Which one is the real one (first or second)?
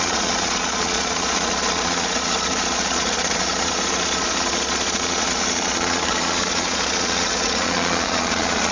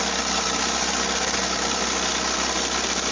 second